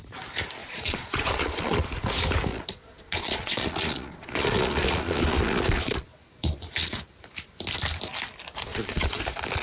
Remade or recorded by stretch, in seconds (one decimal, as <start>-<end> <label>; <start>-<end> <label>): 0.0-0.6 recorded; 0.6-1.9 remade; 1.9-2.5 recorded; 2.5-7.0 remade; 7.0-8.7 recorded; 8.7-9.2 remade; 9.2-9.6 recorded